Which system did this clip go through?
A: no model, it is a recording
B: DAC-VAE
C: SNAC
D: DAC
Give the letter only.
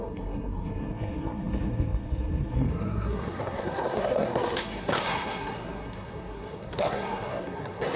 C